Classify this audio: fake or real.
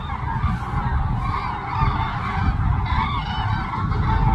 real